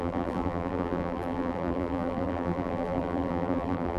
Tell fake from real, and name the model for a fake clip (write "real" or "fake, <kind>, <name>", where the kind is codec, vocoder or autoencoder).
fake, vocoder, BigVGAN v2